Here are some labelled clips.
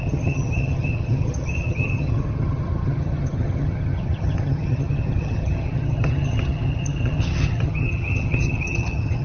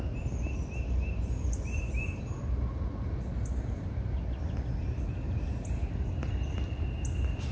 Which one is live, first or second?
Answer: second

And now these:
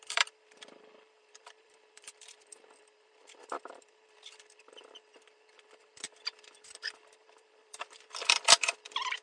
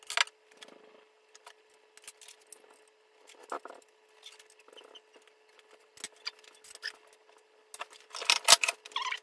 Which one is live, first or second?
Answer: second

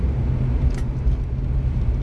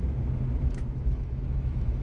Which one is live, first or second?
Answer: first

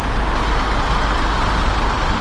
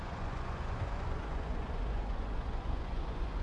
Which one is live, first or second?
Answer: first